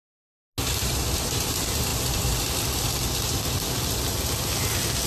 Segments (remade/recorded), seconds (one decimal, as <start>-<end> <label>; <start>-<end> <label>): 0.0-5.1 recorded